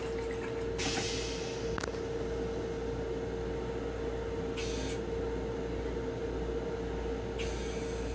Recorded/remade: recorded